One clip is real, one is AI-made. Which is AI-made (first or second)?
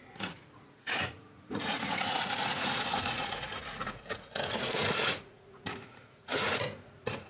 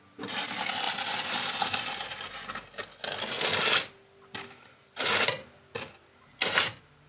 first